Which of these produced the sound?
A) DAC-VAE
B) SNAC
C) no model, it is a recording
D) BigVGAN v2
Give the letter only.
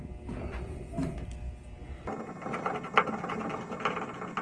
C